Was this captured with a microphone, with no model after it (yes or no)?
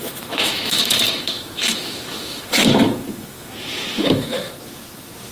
no